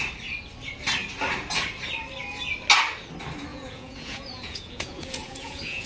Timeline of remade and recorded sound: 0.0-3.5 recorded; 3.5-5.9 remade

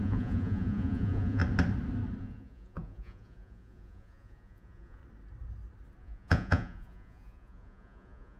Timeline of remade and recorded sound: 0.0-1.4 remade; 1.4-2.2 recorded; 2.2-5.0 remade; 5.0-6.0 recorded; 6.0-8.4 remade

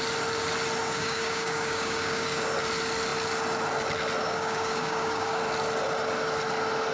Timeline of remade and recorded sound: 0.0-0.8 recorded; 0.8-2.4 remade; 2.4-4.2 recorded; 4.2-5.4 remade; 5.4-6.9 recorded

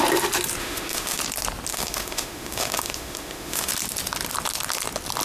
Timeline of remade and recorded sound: 0.0-0.6 recorded; 0.6-1.2 remade; 1.2-1.7 recorded; 1.7-3.7 remade; 3.7-5.2 recorded

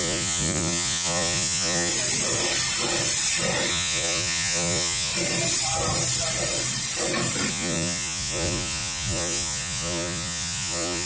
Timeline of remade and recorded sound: 0.0-1.9 remade; 1.9-3.7 recorded; 3.7-5.1 remade; 5.1-7.5 recorded; 7.5-11.1 remade

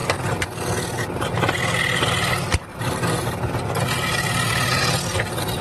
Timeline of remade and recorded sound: 0.0-2.7 recorded; 2.7-3.2 remade; 3.2-5.6 recorded

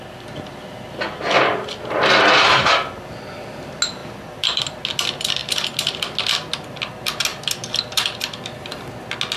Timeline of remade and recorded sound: 0.0-4.0 recorded; 4.0-4.6 remade; 4.6-9.4 recorded